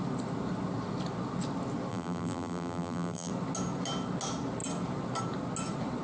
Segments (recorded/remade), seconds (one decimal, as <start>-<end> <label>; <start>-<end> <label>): 0.0-1.9 recorded; 1.9-3.3 remade; 3.3-6.0 recorded